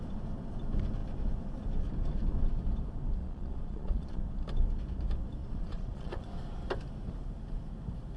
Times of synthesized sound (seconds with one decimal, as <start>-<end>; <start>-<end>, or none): 3.2-4.2; 5.4-6.3